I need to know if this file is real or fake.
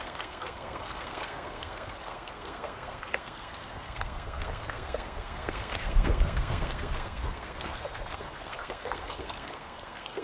fake